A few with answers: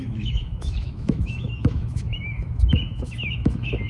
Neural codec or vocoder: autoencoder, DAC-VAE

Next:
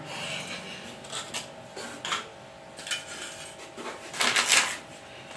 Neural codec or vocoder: none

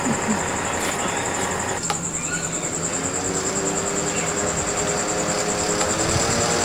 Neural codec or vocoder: none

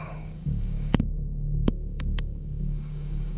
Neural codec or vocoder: codec, DAC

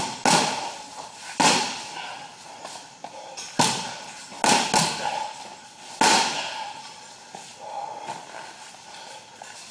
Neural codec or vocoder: none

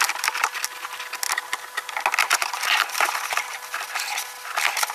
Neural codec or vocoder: none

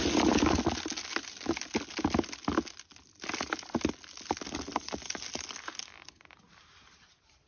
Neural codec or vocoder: none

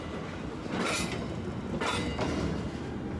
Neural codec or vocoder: none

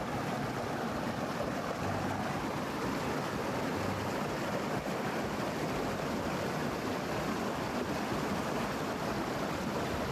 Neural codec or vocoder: none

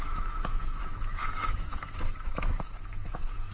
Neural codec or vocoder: autoencoder, DAC-VAE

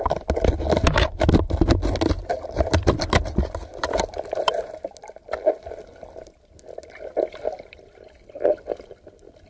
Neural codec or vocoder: none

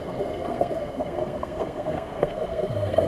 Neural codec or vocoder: codec, SNAC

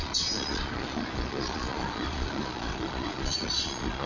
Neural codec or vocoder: vocoder, Vocos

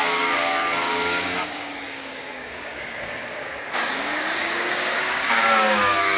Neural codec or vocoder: codec, DAC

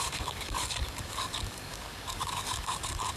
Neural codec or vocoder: codec, DAC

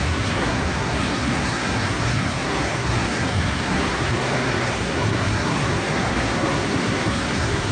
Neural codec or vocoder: codec, SNAC